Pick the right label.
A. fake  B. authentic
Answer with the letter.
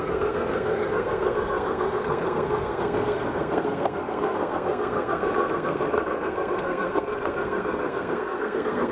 A